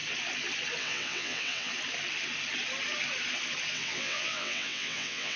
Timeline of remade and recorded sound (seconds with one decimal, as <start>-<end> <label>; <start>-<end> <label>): 0.0-0.8 recorded; 0.8-1.7 remade; 1.7-3.7 recorded; 3.7-5.4 remade